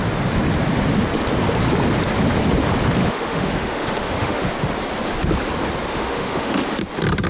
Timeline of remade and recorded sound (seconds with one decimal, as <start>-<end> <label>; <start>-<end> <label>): 0.0-3.0 recorded; 3.0-4.5 remade; 4.5-5.9 recorded; 5.9-6.6 remade; 6.6-7.3 recorded